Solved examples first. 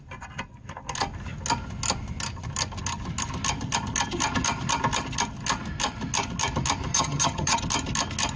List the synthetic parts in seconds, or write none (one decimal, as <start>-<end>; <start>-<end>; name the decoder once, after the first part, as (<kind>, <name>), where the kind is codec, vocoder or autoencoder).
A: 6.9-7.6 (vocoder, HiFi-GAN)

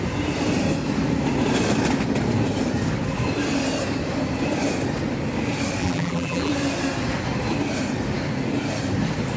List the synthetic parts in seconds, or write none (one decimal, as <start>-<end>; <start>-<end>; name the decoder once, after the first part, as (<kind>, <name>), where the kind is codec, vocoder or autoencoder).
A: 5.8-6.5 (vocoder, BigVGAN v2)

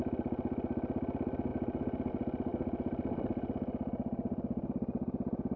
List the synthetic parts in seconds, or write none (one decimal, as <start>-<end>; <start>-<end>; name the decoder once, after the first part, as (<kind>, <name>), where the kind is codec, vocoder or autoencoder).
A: none

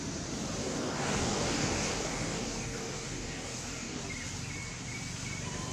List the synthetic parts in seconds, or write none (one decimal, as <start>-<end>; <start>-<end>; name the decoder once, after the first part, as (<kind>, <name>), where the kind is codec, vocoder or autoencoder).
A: 0.6-4.0 (codec, DAC)

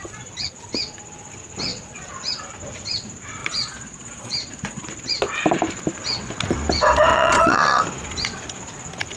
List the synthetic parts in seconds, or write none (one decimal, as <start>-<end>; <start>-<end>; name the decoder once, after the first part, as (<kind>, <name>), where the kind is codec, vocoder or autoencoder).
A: 3.4-4.8 (vocoder, Vocos); 7.1-7.8